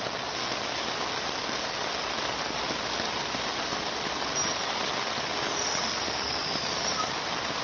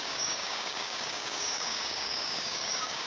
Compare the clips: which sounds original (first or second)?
first